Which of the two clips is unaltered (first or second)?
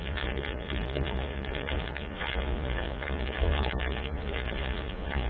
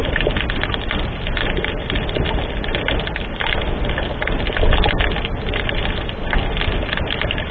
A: second